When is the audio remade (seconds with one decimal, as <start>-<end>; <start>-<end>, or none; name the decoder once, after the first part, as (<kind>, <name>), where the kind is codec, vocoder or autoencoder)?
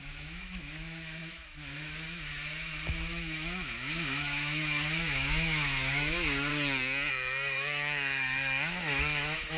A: 0.0-6.5 (autoencoder, DAC-VAE); 7.1-9.6